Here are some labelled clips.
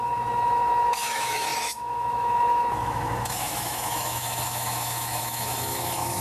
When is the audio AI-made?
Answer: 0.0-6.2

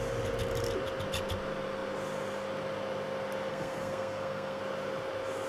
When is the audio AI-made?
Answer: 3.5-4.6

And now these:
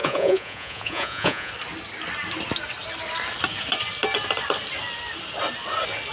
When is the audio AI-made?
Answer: 0.0-1.5

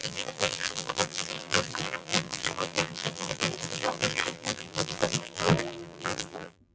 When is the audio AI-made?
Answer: 0.0-6.7